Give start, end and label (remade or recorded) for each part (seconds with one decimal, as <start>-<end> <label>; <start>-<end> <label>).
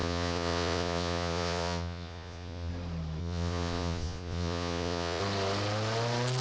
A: 0.0-2.7 remade; 2.7-3.2 recorded; 3.2-5.2 remade; 5.2-6.4 recorded